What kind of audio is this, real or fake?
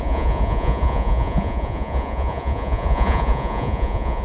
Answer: fake